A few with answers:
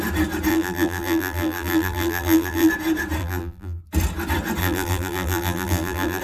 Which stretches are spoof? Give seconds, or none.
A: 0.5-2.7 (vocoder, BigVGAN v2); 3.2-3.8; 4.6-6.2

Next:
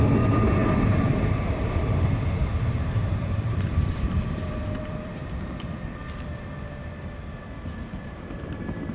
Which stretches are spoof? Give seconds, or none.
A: 0.6-5.3 (vocoder, BigVGAN v2)

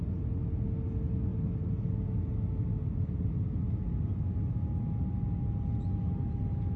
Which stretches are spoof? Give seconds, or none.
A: none

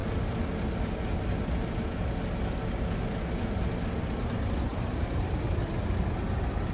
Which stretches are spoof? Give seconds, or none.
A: 4.7-5.6 (vocoder, BigVGAN v2)